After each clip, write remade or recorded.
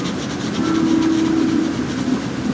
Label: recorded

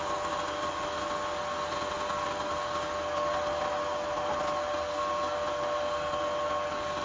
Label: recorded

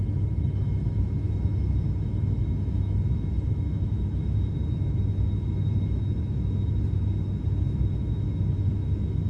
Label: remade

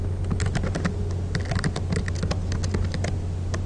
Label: recorded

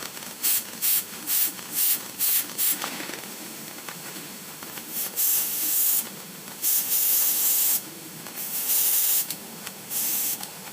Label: remade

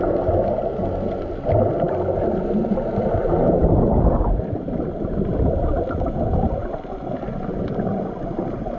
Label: recorded